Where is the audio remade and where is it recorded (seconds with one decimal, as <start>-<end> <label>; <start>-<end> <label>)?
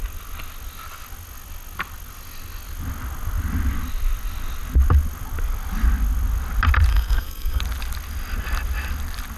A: 0.0-6.9 recorded; 6.9-7.6 remade; 7.6-9.4 recorded